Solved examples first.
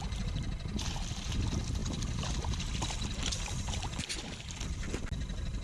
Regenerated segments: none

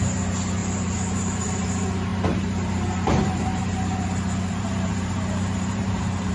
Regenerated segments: 0.6-1.6 (vocoder, BigVGAN v2); 2.1-6.3

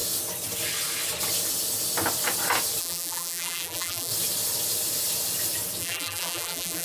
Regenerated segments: 2.8-4.1 (vocoder, BigVGAN v2); 5.8-6.8

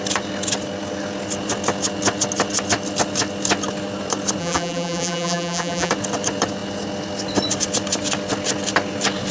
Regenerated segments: 4.4-5.9 (vocoder, BigVGAN v2)

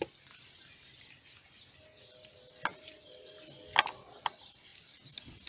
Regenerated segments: 2.7-3.3 (vocoder, BigVGAN v2)

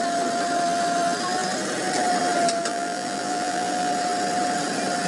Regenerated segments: 2.7-3.9 (vocoder, BigVGAN v2)

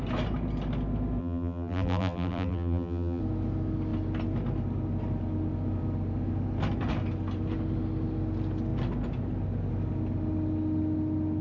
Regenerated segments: 1.2-3.2 (vocoder, BigVGAN v2)

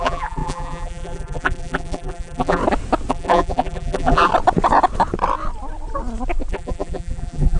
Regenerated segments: 0.0-2.6 (vocoder, BigVGAN v2); 3.1-4.3; 6.5-7.6